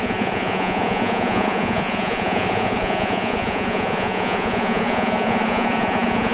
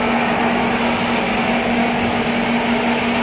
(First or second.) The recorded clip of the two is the second